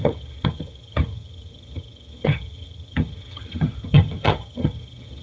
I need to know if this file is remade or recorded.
remade